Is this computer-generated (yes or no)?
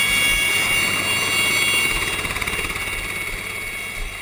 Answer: no